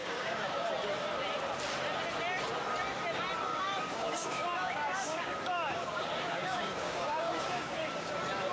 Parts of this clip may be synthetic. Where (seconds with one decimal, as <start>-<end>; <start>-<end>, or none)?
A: 0.0-0.7; 3.5-8.1